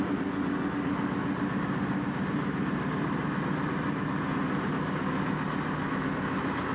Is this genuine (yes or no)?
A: yes